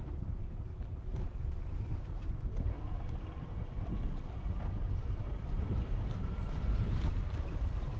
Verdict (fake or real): fake